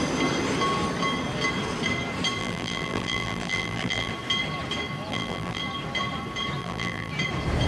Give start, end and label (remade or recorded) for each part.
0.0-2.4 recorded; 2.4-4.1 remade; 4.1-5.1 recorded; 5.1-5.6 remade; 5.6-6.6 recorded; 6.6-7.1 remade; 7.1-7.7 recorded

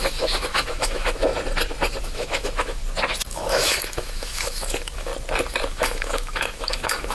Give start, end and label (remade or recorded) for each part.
0.0-1.3 remade; 1.3-2.0 recorded; 2.0-2.8 remade; 2.8-3.3 recorded; 3.3-5.1 remade; 5.1-5.7 recorded; 5.7-7.1 remade

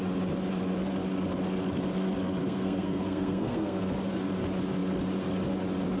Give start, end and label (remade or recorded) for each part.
0.0-2.4 recorded; 2.4-3.8 remade; 3.8-6.0 recorded

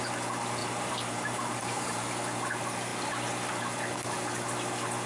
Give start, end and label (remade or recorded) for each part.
0.0-0.6 recorded; 0.6-2.1 remade; 2.1-5.1 recorded

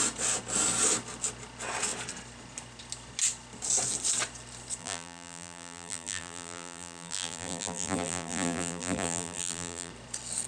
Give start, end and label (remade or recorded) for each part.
0.0-4.8 recorded; 4.8-9.9 remade; 9.9-10.5 recorded

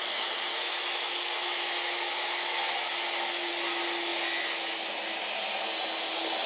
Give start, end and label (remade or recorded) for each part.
0.0-3.5 remade; 3.5-6.5 recorded

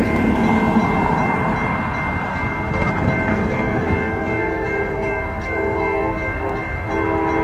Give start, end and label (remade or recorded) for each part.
0.0-2.3 recorded; 2.3-2.9 remade; 2.9-3.3 recorded; 3.3-6.9 remade; 6.9-7.4 recorded

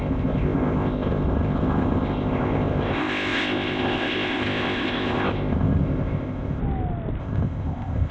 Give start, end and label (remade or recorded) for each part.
0.0-6.6 remade; 6.6-7.2 recorded; 7.2-8.1 remade